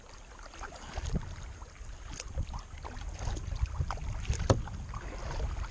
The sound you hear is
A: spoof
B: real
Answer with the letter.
B